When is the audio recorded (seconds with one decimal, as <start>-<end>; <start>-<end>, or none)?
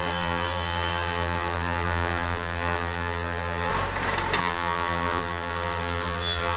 3.7-4.4